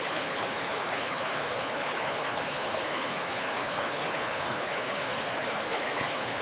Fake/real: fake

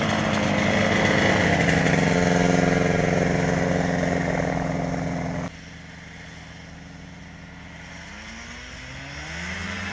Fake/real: real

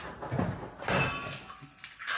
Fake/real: real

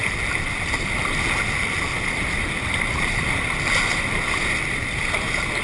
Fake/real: real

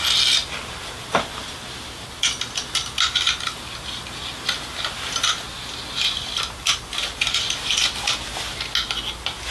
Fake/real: real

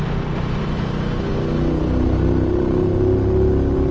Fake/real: real